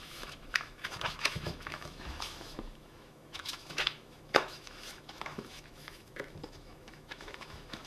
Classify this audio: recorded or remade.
remade